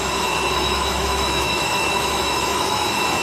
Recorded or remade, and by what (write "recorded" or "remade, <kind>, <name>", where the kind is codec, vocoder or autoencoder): remade, autoencoder, DAC-VAE